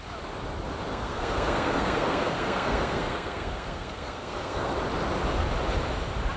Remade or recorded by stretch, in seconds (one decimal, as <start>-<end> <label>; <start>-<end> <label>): 0.0-0.9 recorded; 0.9-4.7 remade; 4.7-6.4 recorded